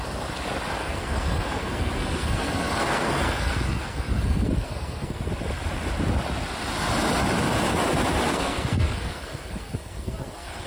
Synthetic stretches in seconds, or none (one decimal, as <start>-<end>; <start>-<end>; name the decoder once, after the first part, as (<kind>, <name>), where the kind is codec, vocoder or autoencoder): 0.8-5.3 (codec, SNAC); 8.3-10.7